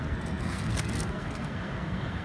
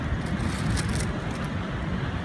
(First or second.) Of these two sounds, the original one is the second